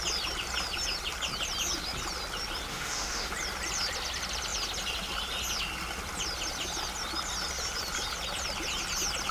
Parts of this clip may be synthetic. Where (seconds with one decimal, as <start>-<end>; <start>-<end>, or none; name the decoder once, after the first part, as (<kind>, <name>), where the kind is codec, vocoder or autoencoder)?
2.7-3.3 (autoencoder, DAC-VAE)